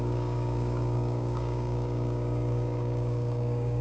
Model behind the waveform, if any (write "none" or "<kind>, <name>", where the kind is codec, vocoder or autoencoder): codec, DAC